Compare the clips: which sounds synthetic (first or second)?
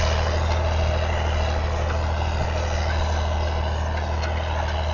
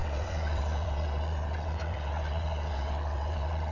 second